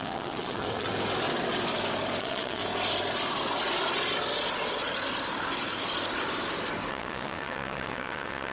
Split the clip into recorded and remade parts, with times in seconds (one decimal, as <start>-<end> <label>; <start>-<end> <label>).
0.0-0.9 remade; 0.9-2.2 recorded; 2.2-2.6 remade; 2.6-6.9 recorded; 6.9-8.5 remade

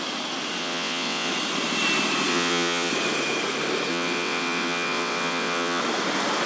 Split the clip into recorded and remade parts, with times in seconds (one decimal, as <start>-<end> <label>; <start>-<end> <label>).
0.0-0.6 recorded; 0.6-1.3 remade; 1.3-2.3 recorded; 2.3-2.9 remade; 2.9-3.9 recorded; 3.9-5.8 remade; 5.8-6.5 recorded

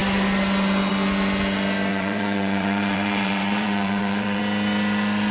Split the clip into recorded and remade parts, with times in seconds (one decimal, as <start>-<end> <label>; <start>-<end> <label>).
0.0-1.9 recorded; 1.9-4.4 remade; 4.4-5.3 recorded